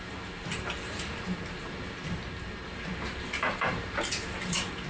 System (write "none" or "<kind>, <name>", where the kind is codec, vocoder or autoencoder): vocoder, BigVGAN v2